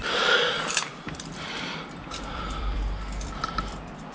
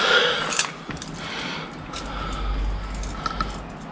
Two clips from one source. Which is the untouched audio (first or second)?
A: second